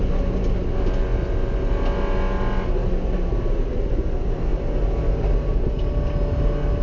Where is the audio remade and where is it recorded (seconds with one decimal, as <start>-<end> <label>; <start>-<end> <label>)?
0.0-6.8 recorded